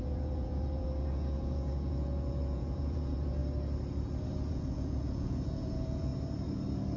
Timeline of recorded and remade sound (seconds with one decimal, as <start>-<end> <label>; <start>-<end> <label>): 0.0-3.4 remade; 3.4-4.5 recorded; 4.5-6.1 remade; 6.1-7.0 recorded